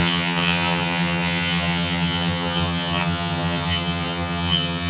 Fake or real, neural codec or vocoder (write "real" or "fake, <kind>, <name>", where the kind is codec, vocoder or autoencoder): fake, vocoder, HiFi-GAN